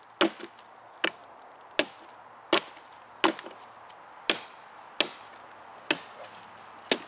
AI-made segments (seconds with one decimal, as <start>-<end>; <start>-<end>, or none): none